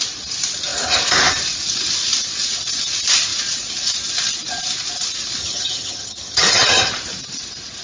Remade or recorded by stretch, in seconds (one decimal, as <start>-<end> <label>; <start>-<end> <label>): 0.0-5.4 recorded; 5.4-6.8 remade; 6.8-7.8 recorded